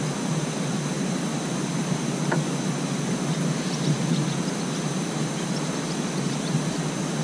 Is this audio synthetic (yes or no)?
no